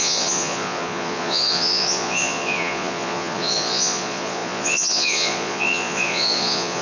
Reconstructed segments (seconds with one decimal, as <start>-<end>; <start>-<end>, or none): 0.0-6.8